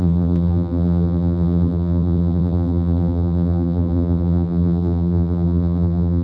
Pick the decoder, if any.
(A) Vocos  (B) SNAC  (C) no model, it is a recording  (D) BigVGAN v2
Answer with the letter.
D